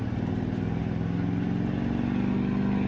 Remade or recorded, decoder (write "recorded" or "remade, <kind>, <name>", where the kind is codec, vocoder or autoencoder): recorded